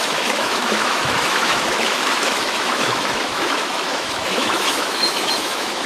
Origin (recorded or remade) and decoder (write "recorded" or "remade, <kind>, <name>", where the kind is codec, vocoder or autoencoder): remade, autoencoder, DAC-VAE